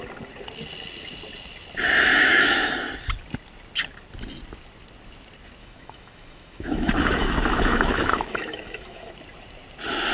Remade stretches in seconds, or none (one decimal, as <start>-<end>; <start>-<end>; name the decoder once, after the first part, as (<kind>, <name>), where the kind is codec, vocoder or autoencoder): 2.1-2.7 (autoencoder, DAC-VAE); 5.6-9.1